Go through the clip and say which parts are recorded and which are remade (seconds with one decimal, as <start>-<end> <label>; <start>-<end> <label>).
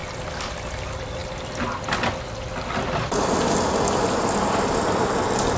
0.0-5.6 recorded